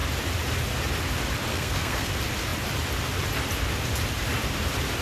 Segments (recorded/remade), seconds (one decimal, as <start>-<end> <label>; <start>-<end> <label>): 0.0-1.5 recorded; 1.5-2.1 remade; 2.1-5.0 recorded